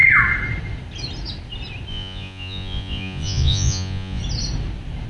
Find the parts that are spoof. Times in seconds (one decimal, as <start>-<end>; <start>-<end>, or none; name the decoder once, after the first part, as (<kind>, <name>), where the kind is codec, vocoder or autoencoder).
1.9-4.2 (vocoder, Vocos)